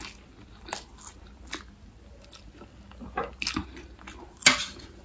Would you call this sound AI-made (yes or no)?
no